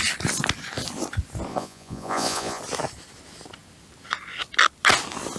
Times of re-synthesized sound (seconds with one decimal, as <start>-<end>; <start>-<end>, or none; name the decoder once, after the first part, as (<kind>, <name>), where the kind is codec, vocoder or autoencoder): 1.5-2.6 (vocoder, Vocos)